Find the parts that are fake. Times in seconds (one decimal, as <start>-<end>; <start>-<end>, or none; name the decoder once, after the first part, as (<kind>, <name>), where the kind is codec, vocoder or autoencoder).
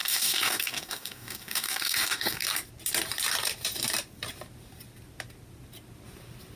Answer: 0.0-2.4 (codec, DAC)